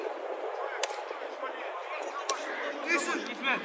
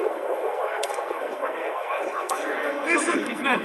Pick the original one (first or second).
first